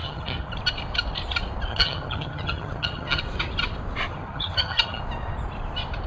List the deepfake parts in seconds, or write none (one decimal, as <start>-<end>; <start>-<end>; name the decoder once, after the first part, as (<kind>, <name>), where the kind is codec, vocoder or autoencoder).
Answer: 0.0-0.5 (vocoder, HiFi-GAN); 1.7-3.2; 4.1-5.0